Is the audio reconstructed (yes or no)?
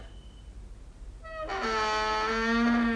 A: no